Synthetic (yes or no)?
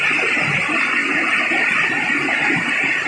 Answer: no